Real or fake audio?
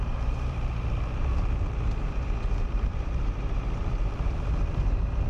fake